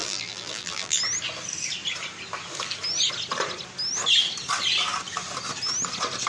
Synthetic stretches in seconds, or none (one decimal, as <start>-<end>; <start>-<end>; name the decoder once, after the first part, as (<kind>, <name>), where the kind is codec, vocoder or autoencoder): 0.0-1.0 (vocoder, BigVGAN v2)